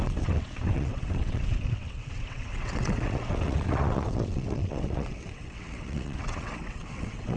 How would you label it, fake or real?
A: fake